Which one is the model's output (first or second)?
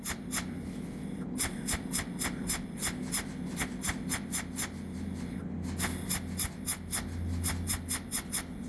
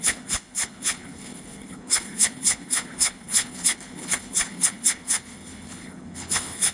second